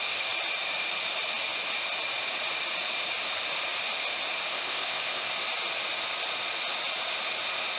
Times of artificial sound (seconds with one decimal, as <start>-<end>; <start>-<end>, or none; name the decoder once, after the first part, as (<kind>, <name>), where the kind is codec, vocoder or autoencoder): 4.5-5.3 (codec, ZipCodec)